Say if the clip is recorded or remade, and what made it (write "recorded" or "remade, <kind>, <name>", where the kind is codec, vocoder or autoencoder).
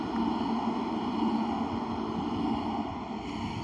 recorded